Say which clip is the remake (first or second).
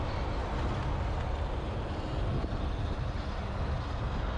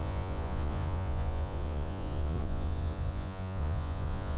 second